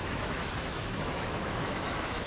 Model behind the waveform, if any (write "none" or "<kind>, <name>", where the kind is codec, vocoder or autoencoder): autoencoder, DAC-VAE